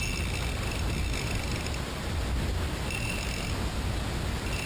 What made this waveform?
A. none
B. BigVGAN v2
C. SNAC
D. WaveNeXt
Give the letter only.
A